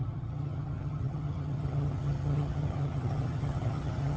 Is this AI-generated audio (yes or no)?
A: yes